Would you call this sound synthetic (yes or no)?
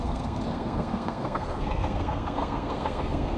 yes